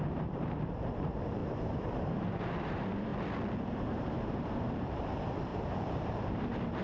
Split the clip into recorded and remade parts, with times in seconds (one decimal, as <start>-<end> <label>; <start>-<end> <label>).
0.0-3.1 remade; 3.1-3.9 recorded; 3.9-6.8 remade